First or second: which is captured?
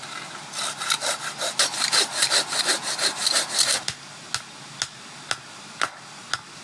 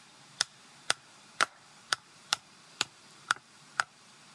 first